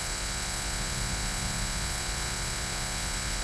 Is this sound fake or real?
fake